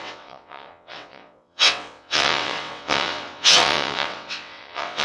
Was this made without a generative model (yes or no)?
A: no